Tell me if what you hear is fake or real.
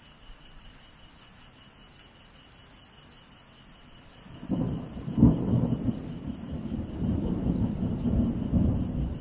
real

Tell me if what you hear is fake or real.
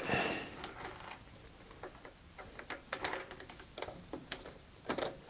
real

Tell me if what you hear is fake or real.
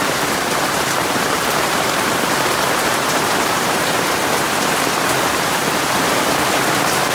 fake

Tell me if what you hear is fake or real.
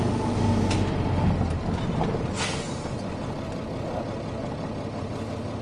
real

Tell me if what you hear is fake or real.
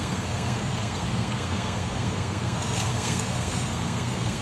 fake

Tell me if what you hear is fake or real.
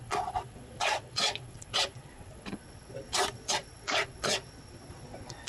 fake